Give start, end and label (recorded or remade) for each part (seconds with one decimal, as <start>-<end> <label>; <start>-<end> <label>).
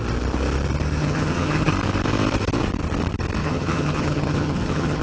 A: 0.0-1.0 recorded; 1.0-1.7 remade; 1.7-3.4 recorded; 3.4-5.0 remade